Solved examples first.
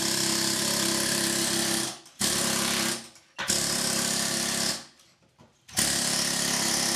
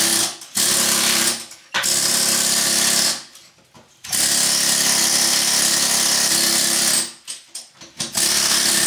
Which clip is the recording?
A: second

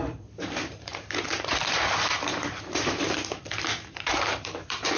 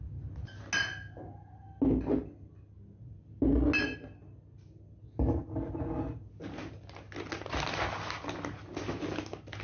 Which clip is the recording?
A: second